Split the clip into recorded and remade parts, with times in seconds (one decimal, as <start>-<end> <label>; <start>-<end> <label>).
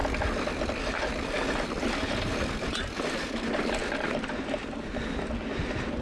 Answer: 0.0-6.0 recorded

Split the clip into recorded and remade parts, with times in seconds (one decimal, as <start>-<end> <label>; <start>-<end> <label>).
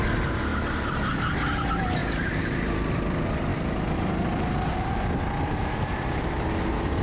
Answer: 0.0-7.0 recorded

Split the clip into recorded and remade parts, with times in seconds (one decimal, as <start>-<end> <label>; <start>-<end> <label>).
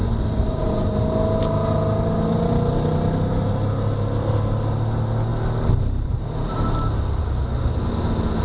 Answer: 0.0-8.4 recorded